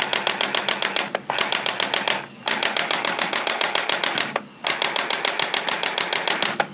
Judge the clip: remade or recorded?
recorded